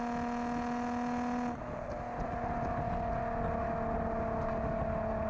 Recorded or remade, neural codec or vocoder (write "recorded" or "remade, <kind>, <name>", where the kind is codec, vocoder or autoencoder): recorded